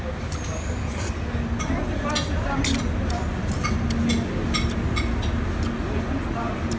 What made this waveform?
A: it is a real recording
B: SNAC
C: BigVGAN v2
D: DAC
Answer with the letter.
A